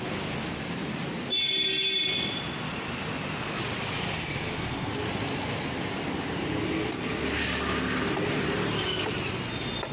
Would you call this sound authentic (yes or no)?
yes